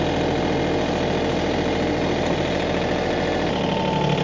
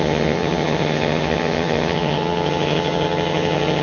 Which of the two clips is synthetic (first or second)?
second